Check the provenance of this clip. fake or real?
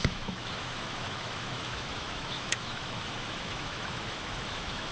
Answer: fake